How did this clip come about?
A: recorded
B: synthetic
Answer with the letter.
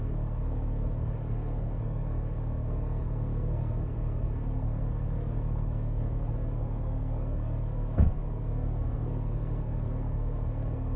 B